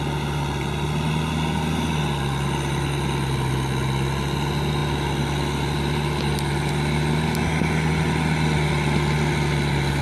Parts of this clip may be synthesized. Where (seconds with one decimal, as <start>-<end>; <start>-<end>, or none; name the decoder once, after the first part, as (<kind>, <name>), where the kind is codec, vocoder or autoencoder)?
none